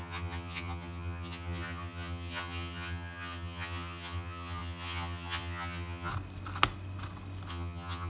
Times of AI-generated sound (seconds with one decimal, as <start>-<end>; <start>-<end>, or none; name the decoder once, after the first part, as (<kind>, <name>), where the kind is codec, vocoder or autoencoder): 0.0-6.1 (vocoder, HiFi-GAN); 7.5-8.1